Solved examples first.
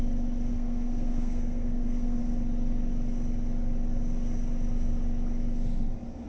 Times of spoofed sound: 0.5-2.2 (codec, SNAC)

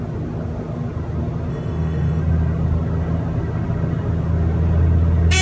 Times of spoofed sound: 1.5-2.2 (autoencoder, DAC-VAE)